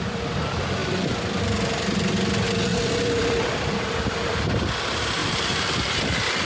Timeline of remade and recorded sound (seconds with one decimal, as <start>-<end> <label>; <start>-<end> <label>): 0.0-0.8 recorded; 0.8-1.4 remade; 1.4-2.7 recorded; 2.7-4.5 remade; 4.5-5.2 recorded; 5.2-5.9 remade; 5.9-6.4 recorded

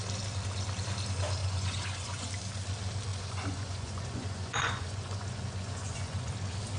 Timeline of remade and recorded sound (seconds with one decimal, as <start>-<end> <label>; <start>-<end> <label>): 0.0-1.4 recorded; 1.4-2.3 remade; 2.3-3.1 recorded; 3.1-6.3 remade; 6.3-6.8 recorded

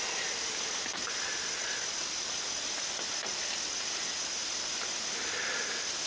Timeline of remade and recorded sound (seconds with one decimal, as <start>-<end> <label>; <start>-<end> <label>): 0.0-6.1 recorded

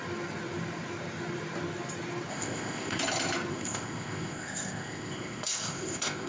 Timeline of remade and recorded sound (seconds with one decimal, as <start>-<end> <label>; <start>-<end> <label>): 0.0-2.3 recorded; 2.3-3.0 remade; 3.0-3.5 recorded; 3.5-6.3 remade